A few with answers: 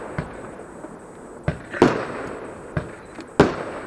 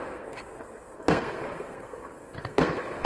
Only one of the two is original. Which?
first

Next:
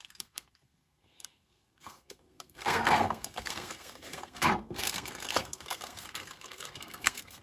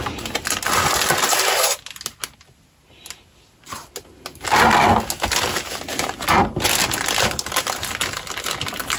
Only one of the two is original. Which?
second